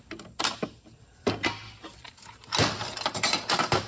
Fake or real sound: real